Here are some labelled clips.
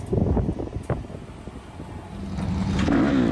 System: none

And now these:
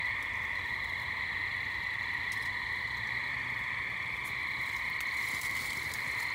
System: none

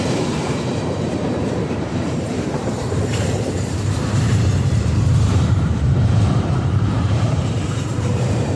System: vocoder, BigVGAN v2